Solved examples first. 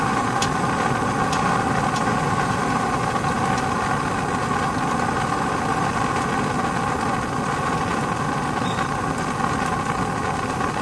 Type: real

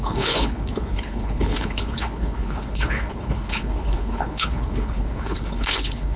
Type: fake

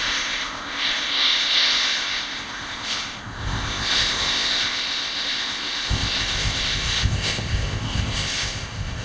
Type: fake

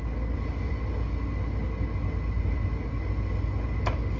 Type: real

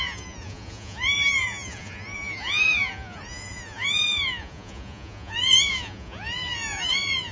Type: fake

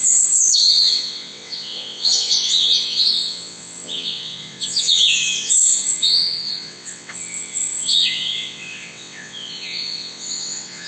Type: fake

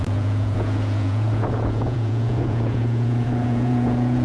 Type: fake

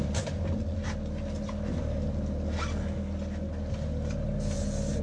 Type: real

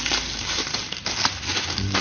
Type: fake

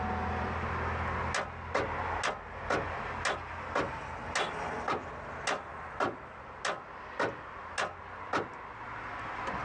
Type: real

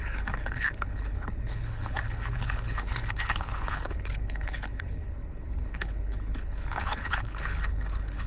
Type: fake